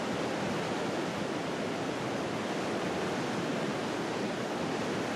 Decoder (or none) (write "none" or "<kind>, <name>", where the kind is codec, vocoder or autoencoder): none